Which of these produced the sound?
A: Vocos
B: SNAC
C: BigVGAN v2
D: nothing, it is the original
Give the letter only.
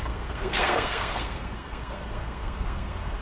B